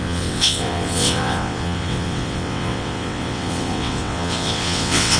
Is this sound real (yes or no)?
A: no